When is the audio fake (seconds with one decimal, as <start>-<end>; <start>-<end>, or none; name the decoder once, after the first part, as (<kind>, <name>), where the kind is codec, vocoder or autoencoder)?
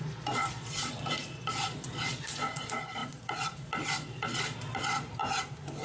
0.0-5.2 (vocoder, Vocos)